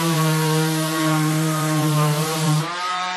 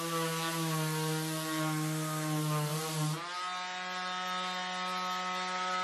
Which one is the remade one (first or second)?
first